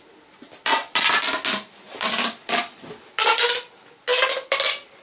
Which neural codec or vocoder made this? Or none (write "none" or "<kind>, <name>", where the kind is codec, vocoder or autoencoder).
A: none